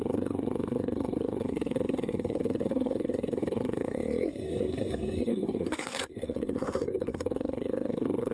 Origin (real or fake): fake